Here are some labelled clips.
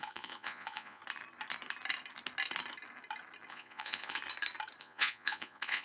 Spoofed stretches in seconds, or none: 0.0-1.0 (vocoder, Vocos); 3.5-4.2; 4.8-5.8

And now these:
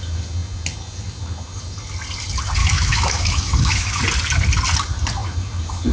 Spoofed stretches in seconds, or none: 2.6-4.0 (autoencoder, DAC-VAE)

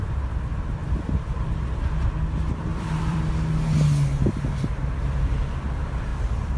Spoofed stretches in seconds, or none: 0.8-1.5 (vocoder, BigVGAN v2); 2.7-3.3; 6.1-6.6

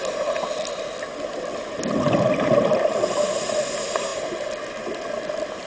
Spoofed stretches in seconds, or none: none

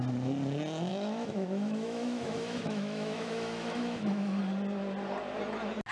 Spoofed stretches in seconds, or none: 0.9-4.4 (autoencoder, DAC-VAE)

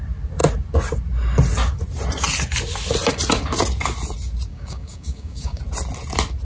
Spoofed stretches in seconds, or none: 4.5-5.6 (codec, DAC)